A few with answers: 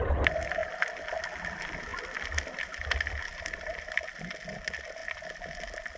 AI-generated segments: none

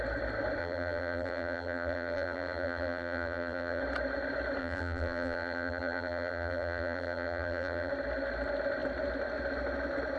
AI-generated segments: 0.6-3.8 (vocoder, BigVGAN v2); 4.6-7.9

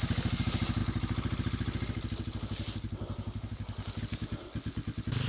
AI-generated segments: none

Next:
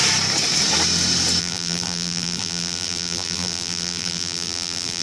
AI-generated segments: 1.4-5.0 (vocoder, BigVGAN v2)

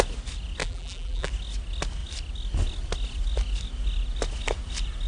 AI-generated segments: 0.6-1.3 (vocoder, BigVGAN v2)

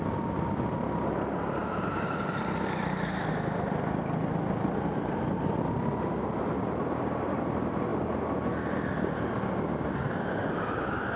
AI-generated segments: none

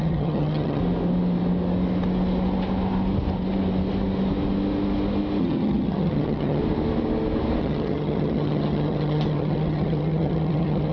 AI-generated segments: 0.0-0.8 (vocoder, HiFi-GAN); 5.4-6.6; 7.6-10.9